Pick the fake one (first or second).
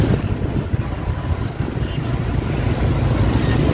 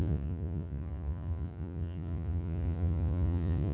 second